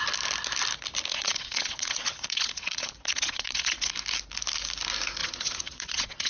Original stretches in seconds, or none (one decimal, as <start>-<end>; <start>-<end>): 0.0-1.1; 3.9-5.2